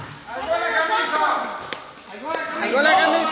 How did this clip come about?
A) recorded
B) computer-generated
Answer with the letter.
A